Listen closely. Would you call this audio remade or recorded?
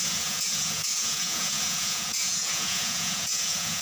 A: remade